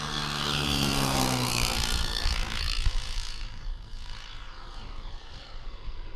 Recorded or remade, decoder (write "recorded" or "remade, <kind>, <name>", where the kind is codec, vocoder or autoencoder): remade, codec, SNAC